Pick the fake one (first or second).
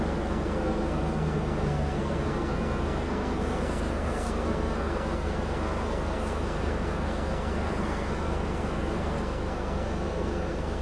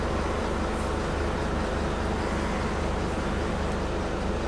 first